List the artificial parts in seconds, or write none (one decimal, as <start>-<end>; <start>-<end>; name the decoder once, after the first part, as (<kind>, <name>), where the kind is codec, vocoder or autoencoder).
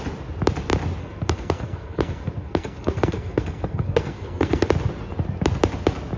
1.0-4.7 (codec, SNAC)